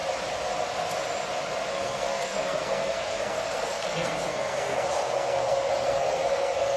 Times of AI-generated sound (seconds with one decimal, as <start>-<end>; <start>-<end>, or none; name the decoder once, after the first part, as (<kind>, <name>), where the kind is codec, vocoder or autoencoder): 1.7-6.8 (codec, SNAC)